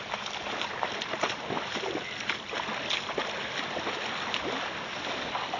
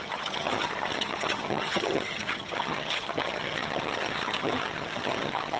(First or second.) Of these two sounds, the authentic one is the first